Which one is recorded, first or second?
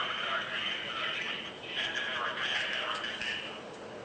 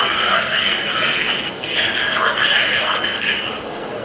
first